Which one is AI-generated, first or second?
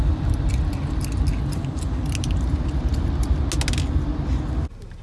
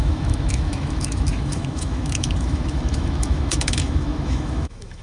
second